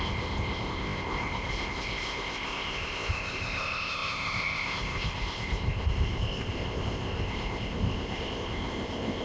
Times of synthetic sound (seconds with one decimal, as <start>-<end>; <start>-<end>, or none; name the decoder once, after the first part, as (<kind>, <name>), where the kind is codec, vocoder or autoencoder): 0.0-9.2 (codec, ZipCodec)